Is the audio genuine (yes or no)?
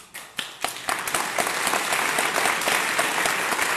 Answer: yes